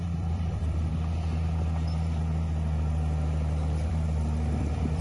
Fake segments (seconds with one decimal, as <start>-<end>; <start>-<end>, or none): 0.0-0.9; 3.9-5.0